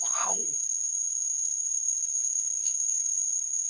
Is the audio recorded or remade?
remade